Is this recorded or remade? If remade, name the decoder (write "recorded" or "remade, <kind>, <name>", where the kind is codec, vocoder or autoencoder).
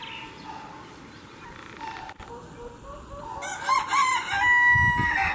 recorded